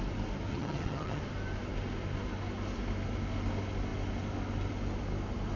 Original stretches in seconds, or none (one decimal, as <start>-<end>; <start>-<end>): 0.0-0.5; 1.2-5.6